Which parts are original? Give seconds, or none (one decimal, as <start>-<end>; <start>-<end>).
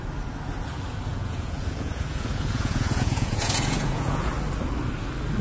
0.0-1.1; 4.3-5.4